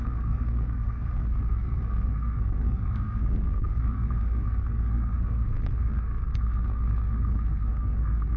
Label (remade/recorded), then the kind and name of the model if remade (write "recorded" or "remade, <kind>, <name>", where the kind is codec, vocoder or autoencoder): remade, codec, SNAC